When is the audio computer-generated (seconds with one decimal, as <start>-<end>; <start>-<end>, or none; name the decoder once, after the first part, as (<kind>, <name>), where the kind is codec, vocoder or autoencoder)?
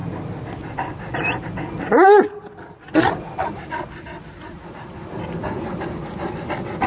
none